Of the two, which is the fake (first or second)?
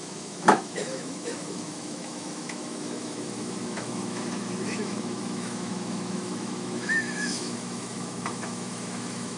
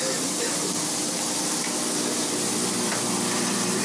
first